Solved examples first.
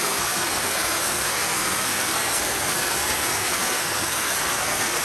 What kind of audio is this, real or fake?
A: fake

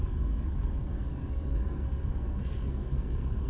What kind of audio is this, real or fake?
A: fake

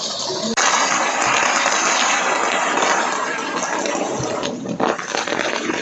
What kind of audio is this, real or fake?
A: real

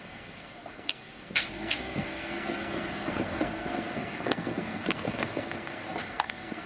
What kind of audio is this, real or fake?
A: fake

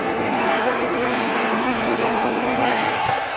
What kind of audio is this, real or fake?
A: fake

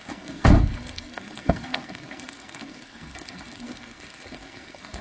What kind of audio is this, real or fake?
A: fake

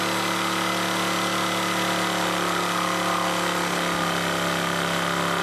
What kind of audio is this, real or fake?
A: real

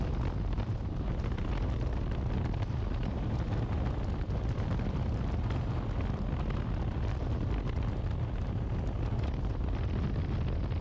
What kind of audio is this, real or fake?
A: real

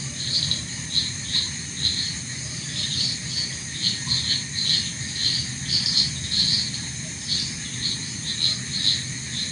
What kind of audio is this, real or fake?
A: real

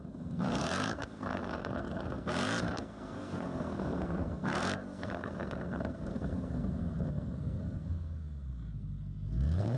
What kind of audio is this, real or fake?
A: fake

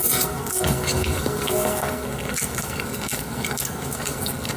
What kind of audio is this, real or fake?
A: fake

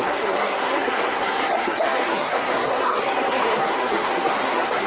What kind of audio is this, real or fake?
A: fake